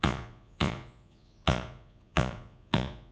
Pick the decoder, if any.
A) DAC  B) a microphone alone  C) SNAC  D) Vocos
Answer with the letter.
D